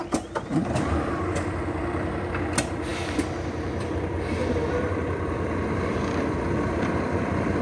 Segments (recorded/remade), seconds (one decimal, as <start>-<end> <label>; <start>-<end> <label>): 0.0-7.6 recorded